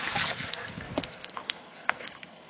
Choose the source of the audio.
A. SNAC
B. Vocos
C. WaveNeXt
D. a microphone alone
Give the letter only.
A